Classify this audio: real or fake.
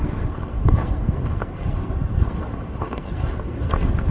fake